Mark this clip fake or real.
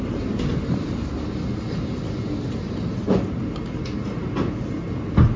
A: real